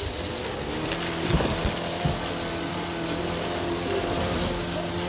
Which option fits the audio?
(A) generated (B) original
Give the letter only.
B